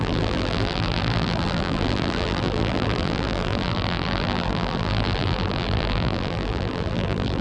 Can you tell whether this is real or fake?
fake